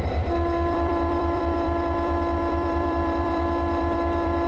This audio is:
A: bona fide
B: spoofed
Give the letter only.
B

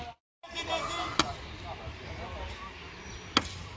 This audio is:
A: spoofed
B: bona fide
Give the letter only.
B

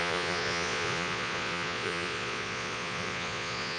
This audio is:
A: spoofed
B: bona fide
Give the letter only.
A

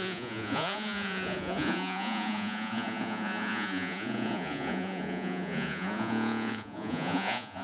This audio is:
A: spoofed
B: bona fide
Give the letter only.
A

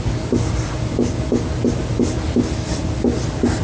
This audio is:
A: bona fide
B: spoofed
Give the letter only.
A